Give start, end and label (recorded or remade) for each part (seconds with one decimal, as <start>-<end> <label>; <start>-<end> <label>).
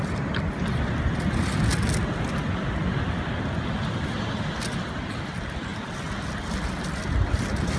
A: 0.0-7.8 recorded